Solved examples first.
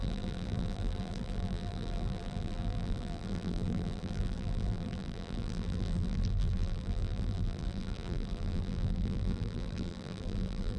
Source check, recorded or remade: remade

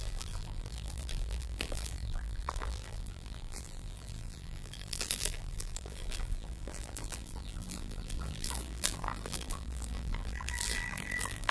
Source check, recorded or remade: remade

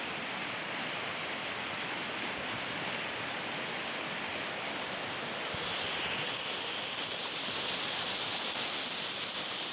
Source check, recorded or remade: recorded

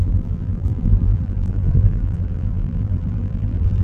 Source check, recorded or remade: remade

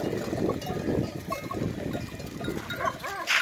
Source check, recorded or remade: recorded